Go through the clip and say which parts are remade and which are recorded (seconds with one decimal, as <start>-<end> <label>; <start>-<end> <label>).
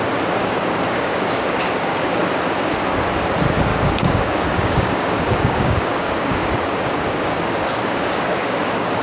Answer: 0.0-0.4 recorded; 0.4-2.2 remade; 2.2-3.7 recorded; 3.7-9.0 remade